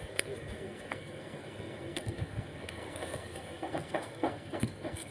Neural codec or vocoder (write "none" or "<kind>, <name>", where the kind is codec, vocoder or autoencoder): codec, SNAC